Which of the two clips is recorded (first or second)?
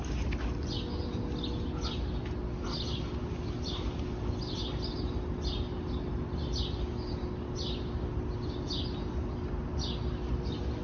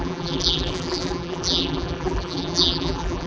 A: first